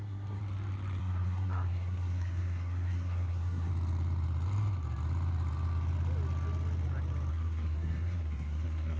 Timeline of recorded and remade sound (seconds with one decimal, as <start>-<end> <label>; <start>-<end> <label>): 0.0-0.4 remade; 0.4-1.0 recorded; 1.0-3.7 remade; 3.7-7.3 recorded; 7.3-9.0 remade